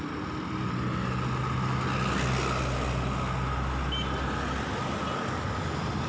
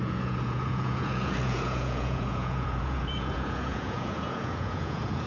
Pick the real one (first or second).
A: first